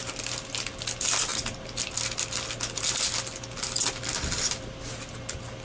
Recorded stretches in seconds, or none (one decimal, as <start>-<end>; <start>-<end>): 0.0-5.6